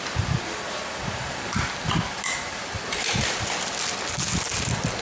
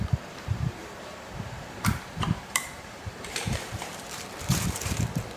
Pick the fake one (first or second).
second